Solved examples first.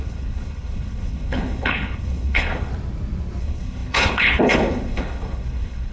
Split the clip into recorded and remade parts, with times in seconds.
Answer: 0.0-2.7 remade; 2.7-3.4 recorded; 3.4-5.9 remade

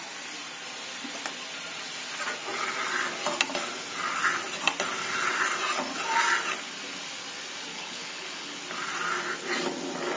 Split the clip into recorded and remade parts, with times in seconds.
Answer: 0.0-7.7 recorded; 7.7-8.6 remade; 8.6-10.2 recorded

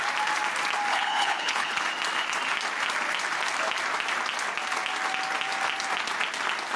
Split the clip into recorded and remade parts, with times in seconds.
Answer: 0.0-0.9 recorded; 0.9-1.8 remade; 1.8-6.8 recorded

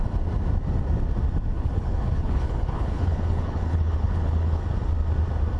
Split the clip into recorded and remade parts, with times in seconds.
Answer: 0.0-1.5 recorded; 1.5-4.6 remade; 4.6-5.6 recorded

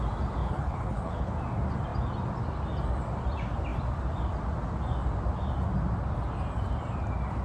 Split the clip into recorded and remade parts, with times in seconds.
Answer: 0.0-0.4 recorded; 0.4-1.3 remade; 1.3-7.4 recorded

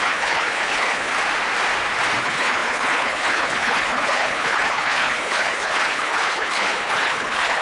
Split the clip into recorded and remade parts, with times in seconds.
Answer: 0.0-1.1 remade; 1.1-2.2 recorded; 2.2-7.6 remade